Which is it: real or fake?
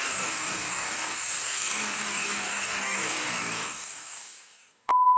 fake